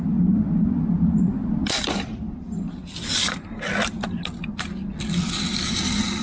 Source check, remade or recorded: recorded